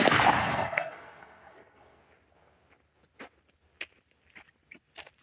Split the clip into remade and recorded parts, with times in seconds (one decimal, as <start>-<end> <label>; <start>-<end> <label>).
0.0-0.4 recorded; 0.4-2.0 remade; 2.0-5.2 recorded